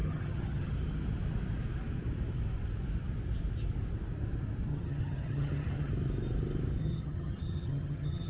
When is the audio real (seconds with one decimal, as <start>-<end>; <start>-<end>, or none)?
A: 0.7-4.7; 5.9-6.8